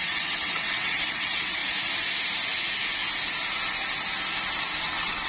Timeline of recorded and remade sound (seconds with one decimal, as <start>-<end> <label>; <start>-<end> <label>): 0.0-1.6 remade; 1.6-4.8 recorded; 4.8-5.3 remade

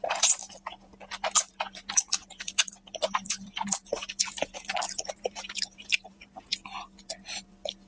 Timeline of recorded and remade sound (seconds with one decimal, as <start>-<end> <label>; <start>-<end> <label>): 0.0-0.4 remade; 0.4-5.1 recorded; 5.1-6.5 remade; 6.5-7.9 recorded

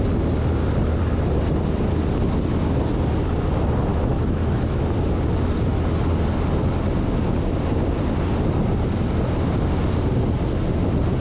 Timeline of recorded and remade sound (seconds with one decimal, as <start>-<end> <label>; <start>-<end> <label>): 0.0-3.9 recorded; 3.9-4.8 remade; 4.8-11.2 recorded

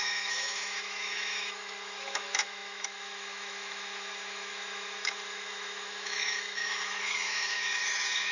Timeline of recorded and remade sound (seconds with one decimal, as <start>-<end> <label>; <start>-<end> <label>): 0.0-8.3 remade

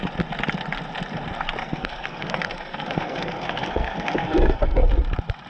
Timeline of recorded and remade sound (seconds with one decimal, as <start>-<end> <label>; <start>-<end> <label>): 0.0-1.6 recorded; 1.6-4.9 remade; 4.9-5.5 recorded

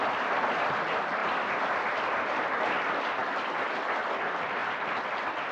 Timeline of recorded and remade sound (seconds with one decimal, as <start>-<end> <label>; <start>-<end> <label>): 0.0-5.5 recorded

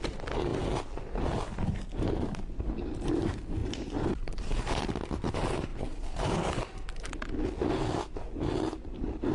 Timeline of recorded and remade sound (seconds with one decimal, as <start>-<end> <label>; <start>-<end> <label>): 0.0-3.6 recorded; 3.6-5.0 remade; 5.0-5.7 recorded; 5.7-7.1 remade; 7.1-9.3 recorded